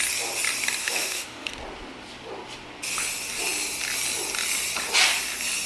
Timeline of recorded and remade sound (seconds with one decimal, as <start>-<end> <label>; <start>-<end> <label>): 0.0-0.8 recorded; 0.8-1.5 remade; 1.5-5.7 recorded

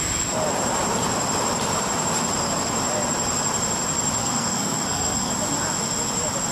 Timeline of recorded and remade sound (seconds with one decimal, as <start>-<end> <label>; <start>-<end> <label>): 0.0-4.2 recorded; 4.2-5.3 remade; 5.3-6.5 recorded

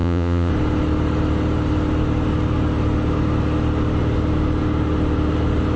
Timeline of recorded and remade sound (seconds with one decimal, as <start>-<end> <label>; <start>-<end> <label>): 0.0-0.5 remade; 0.5-5.8 recorded

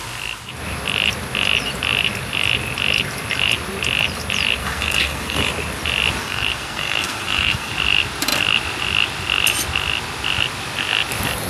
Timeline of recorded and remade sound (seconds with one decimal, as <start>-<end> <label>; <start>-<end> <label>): 0.0-4.6 recorded; 4.6-5.5 remade; 5.5-6.2 recorded; 6.2-7.7 remade; 7.7-11.5 recorded

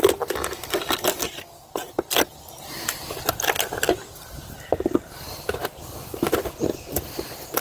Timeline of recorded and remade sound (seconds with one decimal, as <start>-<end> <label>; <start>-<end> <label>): 0.0-7.6 recorded

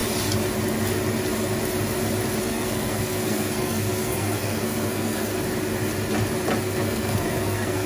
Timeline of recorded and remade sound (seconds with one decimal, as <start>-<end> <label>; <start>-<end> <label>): 0.0-2.4 recorded; 2.4-5.3 remade; 5.3-6.6 recorded; 6.6-7.9 remade

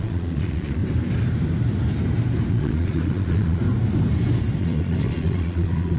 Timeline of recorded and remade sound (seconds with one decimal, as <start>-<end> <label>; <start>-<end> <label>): 0.0-0.8 remade; 0.8-2.5 recorded; 2.5-3.6 remade; 3.6-4.6 recorded; 4.6-6.0 remade